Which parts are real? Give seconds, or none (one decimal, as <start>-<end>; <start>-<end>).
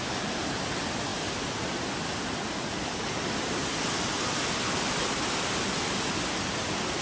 0.0-7.0